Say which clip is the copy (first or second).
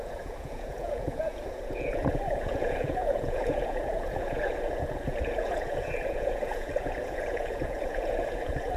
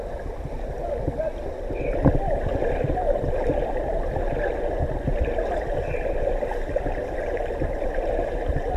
first